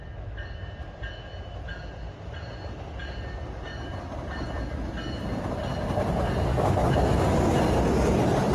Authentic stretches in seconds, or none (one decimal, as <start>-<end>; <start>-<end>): 0.0-6.5; 7.1-8.5